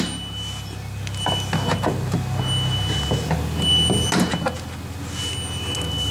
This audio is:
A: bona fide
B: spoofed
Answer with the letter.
A